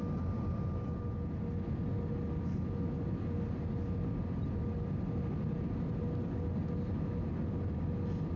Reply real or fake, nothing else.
real